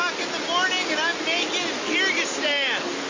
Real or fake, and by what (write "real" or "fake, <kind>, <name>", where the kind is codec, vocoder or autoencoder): real